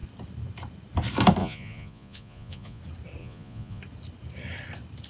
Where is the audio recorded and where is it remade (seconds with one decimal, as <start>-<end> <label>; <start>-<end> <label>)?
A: 0.0-1.4 recorded; 1.4-2.8 remade; 2.8-3.2 recorded; 3.2-3.8 remade; 3.8-5.1 recorded